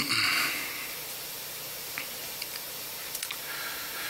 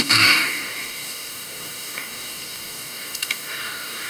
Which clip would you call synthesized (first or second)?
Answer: second